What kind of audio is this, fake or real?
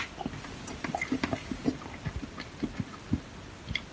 real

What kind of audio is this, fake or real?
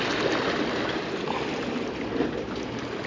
real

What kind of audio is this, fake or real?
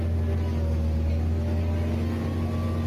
real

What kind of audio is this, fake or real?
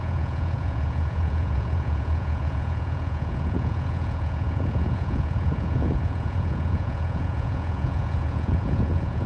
fake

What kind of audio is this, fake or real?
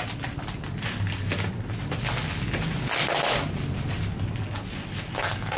real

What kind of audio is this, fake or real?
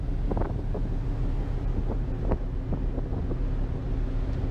real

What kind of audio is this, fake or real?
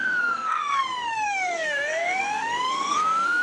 fake